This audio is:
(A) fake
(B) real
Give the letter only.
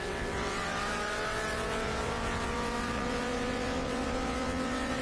A